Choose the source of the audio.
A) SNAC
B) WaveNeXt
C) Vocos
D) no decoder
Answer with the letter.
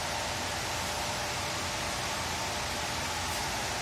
D